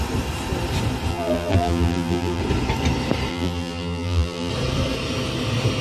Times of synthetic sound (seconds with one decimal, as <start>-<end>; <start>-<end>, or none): 1.1-2.4; 3.3-4.5